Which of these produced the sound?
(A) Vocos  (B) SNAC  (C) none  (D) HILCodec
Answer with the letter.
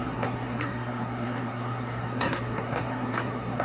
B